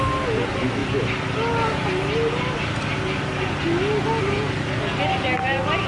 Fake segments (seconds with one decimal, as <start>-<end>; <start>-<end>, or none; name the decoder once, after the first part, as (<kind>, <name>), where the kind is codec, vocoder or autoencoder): none

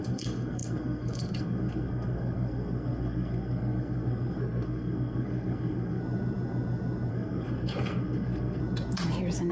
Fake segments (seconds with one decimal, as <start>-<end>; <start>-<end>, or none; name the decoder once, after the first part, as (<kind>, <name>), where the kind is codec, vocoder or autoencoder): 0.0-6.0 (codec, SNAC); 7.1-8.6

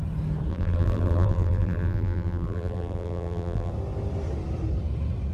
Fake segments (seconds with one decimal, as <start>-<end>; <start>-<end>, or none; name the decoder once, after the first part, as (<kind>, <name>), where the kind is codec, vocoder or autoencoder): 0.5-3.7 (vocoder, BigVGAN v2)

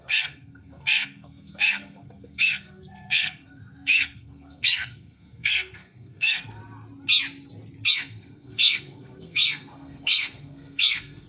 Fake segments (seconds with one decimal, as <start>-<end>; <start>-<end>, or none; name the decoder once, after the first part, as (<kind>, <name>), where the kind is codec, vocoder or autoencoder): 0.0-6.6 (codec, SNAC); 7.9-11.3

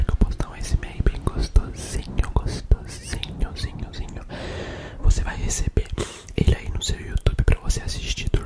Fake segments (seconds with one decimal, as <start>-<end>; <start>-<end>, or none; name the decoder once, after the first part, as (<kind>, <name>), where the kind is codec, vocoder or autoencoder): 3.1-4.3 (vocoder, BigVGAN v2); 5.8-8.5